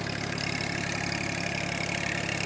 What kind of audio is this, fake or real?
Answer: real